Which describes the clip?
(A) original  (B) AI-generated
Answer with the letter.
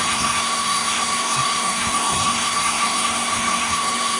B